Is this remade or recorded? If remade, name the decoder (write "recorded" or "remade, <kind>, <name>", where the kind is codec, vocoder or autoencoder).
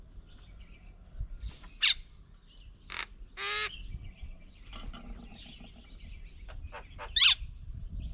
recorded